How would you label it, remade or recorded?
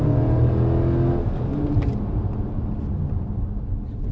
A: recorded